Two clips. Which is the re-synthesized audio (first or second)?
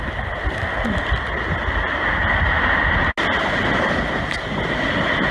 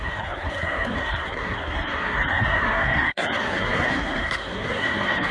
second